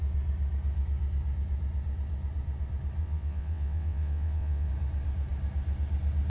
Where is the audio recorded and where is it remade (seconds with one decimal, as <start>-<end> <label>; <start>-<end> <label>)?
0.0-3.0 recorded; 3.0-4.7 remade; 4.7-6.3 recorded